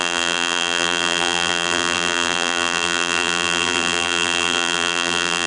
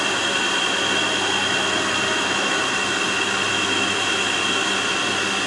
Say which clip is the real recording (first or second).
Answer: second